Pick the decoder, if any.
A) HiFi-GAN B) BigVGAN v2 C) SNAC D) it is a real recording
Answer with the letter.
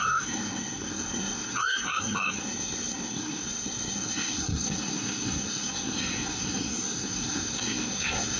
C